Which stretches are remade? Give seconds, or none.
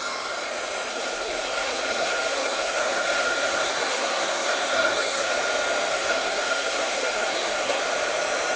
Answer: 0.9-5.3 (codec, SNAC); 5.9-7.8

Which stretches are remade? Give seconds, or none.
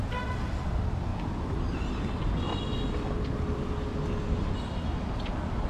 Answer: none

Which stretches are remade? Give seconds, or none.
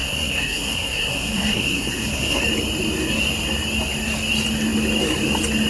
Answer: 0.0-2.4 (codec, SNAC)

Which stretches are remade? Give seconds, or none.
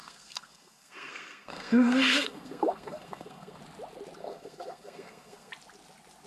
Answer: 0.0-3.6 (codec, SNAC); 4.2-5.5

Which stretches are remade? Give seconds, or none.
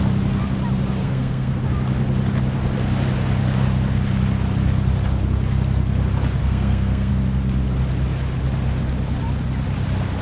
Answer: 1.0-1.6 (codec, SNAC); 6.4-7.1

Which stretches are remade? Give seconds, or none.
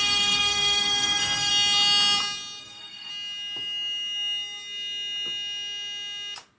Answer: 0.0-1.5 (codec, SNAC); 2.6-3.1